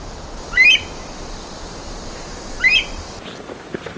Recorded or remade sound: recorded